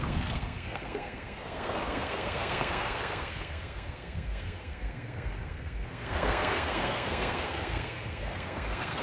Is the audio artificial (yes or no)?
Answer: yes